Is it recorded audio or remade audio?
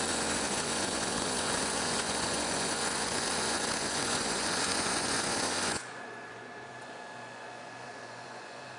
remade